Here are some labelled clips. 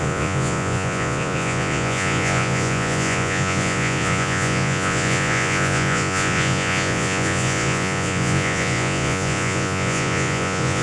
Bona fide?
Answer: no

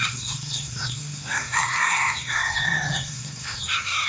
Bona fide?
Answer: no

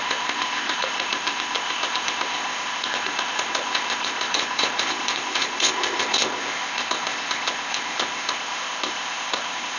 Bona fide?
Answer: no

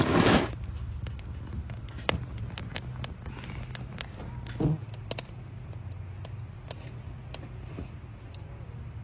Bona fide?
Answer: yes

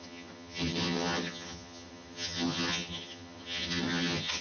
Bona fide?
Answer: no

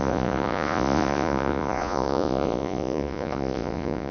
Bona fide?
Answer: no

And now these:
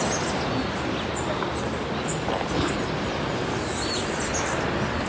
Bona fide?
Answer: yes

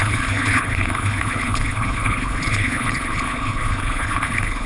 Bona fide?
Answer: no